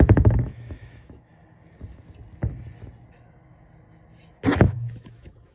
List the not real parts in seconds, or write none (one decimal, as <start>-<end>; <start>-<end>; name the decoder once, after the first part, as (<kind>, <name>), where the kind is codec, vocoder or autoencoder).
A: 0.0-1.3 (autoencoder, DAC-VAE); 4.6-5.5